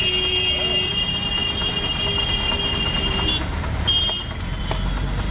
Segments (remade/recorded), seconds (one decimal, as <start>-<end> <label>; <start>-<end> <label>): 0.0-5.3 recorded

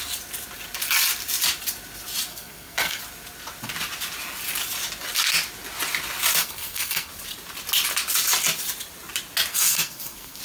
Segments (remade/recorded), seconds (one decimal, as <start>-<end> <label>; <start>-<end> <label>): 0.0-2.3 recorded; 2.3-3.0 remade; 3.0-6.4 recorded; 6.4-7.1 remade; 7.1-9.5 recorded; 9.5-10.4 remade

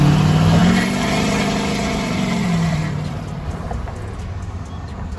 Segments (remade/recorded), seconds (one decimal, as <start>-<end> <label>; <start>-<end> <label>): 0.0-0.6 recorded; 0.6-3.7 remade; 3.7-5.2 recorded

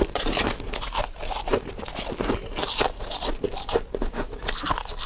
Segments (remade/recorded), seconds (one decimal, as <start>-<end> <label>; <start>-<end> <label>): 0.0-5.1 recorded

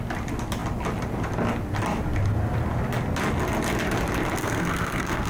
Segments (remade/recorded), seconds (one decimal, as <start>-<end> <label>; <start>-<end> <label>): 0.0-4.4 recorded; 4.4-5.3 remade